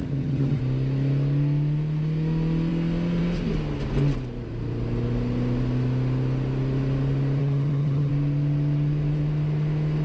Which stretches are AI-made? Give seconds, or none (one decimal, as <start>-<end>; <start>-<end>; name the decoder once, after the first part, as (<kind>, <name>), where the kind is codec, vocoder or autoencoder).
0.0-0.6 (vocoder, HiFi-GAN); 7.4-8.1